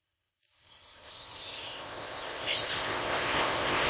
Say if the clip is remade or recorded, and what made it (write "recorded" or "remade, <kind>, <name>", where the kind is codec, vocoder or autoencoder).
remade, codec, ZipCodec